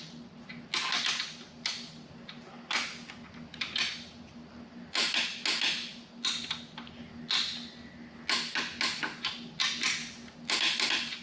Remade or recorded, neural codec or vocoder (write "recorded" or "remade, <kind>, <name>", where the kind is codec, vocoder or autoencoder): recorded